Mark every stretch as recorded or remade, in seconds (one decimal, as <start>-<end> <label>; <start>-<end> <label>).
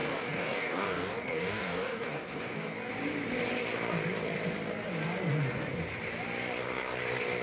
0.0-2.9 remade; 2.9-7.4 recorded